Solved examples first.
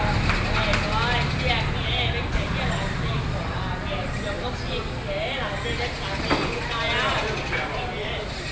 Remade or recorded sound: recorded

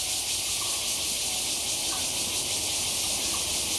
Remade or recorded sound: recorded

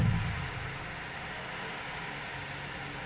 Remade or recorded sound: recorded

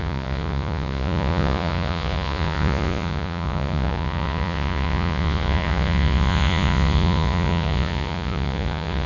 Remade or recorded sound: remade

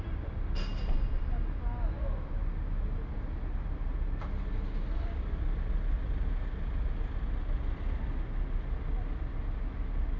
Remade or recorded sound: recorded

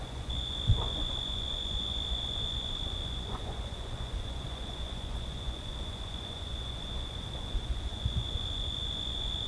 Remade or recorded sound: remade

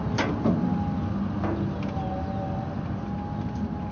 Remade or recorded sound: recorded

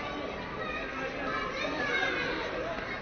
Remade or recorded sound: recorded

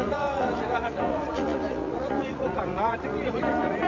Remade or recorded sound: remade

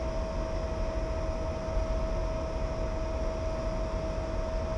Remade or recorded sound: recorded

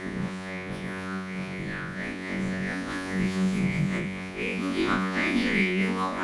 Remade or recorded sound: remade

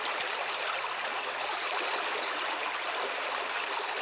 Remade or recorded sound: recorded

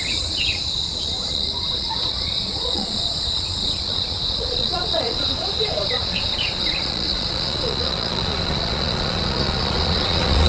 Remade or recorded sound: remade